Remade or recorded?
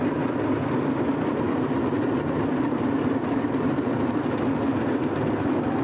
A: recorded